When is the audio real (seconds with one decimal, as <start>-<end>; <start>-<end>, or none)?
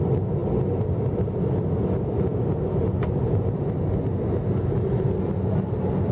0.0-6.1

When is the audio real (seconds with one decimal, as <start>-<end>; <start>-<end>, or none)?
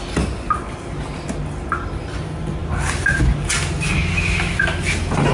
0.0-5.3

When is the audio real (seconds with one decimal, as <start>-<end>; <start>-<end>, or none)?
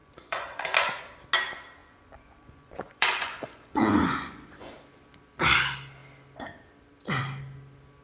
1.1-1.8; 4.7-8.0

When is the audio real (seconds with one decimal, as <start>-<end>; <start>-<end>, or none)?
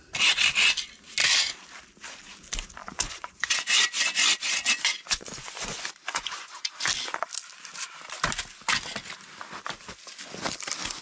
0.0-2.8; 6.7-11.0